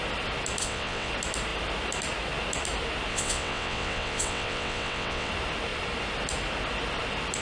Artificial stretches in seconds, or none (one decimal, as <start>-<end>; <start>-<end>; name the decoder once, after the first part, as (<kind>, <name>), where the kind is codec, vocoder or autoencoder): 0.6-1.1 (vocoder, WaveNeXt); 3.1-5.3